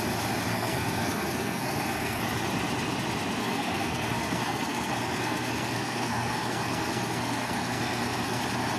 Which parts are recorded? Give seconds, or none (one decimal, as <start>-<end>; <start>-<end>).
0.0-0.5; 2.2-3.4; 8.4-8.8